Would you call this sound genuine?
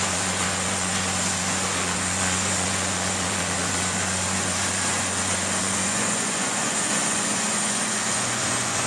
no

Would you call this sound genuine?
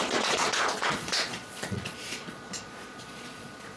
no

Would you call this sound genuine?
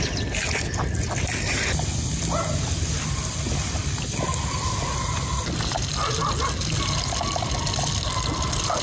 yes